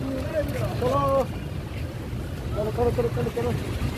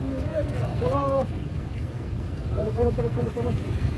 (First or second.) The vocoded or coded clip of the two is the second